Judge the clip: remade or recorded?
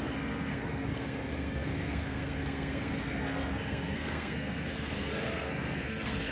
remade